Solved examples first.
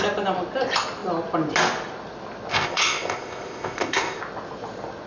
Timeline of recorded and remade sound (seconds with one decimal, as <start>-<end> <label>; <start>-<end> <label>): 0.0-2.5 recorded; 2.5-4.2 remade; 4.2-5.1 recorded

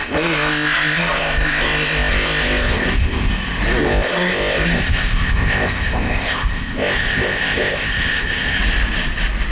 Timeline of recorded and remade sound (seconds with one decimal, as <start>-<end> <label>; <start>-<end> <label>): 0.0-3.3 remade; 3.3-3.8 recorded; 3.8-8.6 remade; 8.6-9.5 recorded

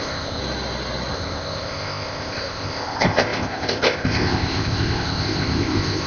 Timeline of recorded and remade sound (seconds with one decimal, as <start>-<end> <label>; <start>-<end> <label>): 0.0-0.4 remade; 0.4-1.1 recorded; 1.1-6.1 remade